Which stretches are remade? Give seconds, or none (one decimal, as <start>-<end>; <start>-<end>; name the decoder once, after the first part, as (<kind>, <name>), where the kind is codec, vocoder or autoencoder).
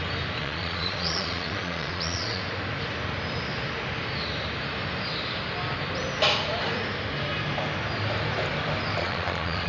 0.4-2.4 (vocoder, Vocos); 9.0-9.7